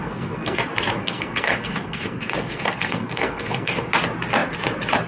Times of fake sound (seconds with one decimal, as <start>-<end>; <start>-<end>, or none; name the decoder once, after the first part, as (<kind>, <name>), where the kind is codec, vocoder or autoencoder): 0.0-0.6 (codec, SNAC); 1.0-3.9